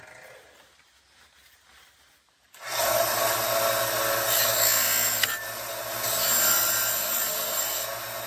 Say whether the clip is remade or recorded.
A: recorded